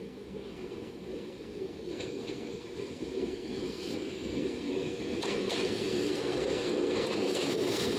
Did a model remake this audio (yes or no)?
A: yes